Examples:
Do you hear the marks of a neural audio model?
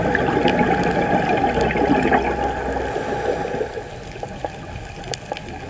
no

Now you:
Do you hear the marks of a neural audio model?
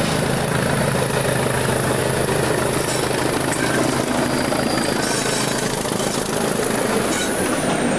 no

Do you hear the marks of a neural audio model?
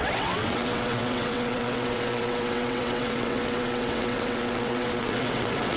yes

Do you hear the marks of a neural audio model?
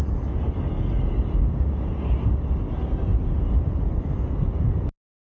no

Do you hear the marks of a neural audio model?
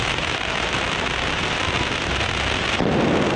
no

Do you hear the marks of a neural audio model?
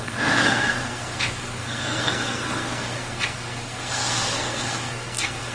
yes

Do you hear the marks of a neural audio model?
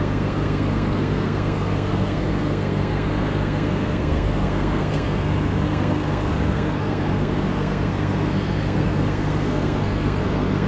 yes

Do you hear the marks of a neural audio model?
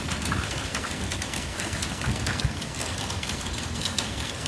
yes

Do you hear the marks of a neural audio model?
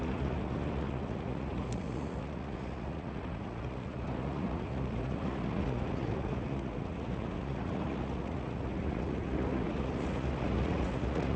yes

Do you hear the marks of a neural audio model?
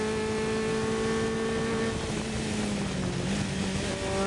no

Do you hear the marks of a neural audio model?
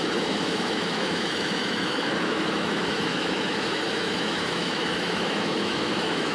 yes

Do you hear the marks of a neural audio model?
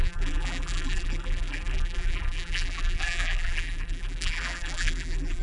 yes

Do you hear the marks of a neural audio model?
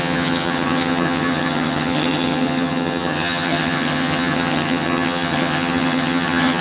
yes